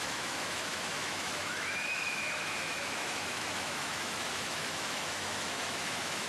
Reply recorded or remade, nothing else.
remade